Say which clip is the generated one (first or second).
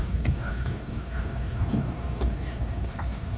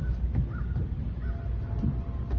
first